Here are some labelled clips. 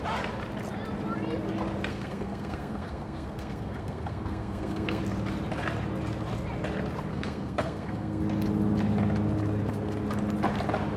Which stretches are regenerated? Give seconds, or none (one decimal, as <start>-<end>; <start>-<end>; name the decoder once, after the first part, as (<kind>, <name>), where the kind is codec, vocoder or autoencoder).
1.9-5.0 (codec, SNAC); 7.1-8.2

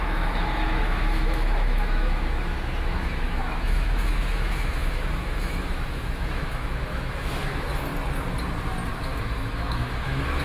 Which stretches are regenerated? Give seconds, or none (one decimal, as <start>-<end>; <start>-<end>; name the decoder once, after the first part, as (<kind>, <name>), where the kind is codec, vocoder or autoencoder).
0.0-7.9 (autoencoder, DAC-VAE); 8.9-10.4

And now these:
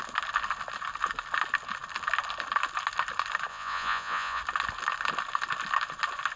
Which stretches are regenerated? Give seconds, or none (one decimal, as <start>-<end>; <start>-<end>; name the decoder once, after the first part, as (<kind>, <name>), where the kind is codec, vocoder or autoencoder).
3.5-4.4 (vocoder, Vocos)

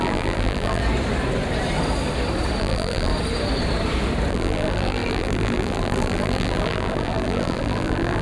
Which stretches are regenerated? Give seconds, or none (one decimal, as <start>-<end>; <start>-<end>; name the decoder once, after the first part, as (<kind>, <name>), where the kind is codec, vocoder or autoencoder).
0.0-0.8 (vocoder, BigVGAN v2); 2.6-3.1; 4.3-8.2

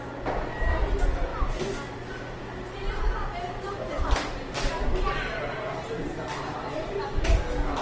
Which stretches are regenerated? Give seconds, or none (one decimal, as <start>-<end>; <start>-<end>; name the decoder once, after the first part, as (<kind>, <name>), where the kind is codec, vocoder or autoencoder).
none